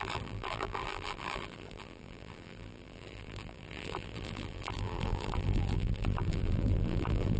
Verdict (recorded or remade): remade